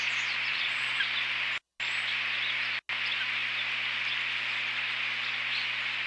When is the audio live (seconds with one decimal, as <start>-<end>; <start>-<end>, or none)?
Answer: 0.0-0.5; 1.0-6.1